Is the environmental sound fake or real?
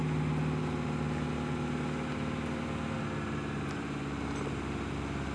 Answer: real